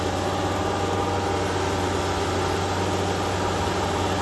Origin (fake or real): real